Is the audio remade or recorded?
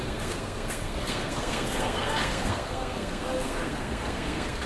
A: remade